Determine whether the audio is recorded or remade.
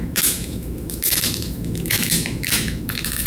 remade